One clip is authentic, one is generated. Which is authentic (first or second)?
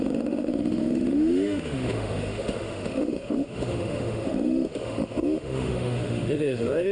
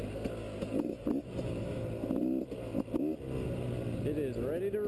second